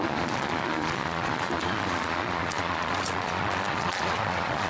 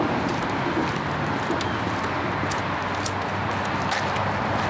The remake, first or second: first